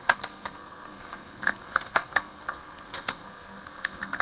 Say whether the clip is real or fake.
fake